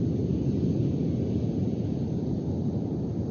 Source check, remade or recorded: recorded